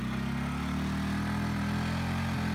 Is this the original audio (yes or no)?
yes